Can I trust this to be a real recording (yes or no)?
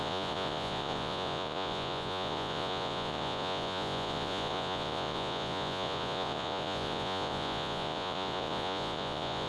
no